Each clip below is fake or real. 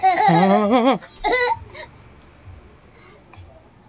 real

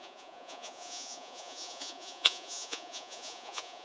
fake